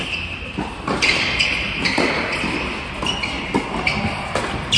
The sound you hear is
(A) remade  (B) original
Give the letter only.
B